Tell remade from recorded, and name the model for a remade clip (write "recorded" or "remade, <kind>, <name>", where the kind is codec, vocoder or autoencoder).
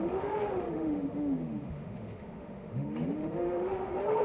remade, autoencoder, DAC-VAE